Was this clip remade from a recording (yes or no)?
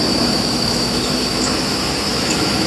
yes